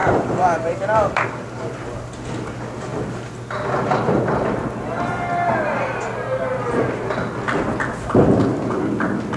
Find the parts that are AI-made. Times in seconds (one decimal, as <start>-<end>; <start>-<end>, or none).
0.0-1.7